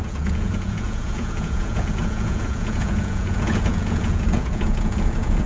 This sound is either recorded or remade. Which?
remade